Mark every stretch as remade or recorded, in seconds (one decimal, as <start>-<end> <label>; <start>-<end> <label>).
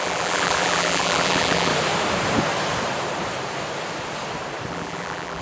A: 0.0-1.7 remade; 1.7-4.7 recorded; 4.7-5.4 remade